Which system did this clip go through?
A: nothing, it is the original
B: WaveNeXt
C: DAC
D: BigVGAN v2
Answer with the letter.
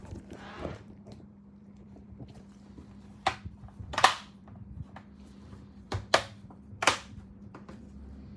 D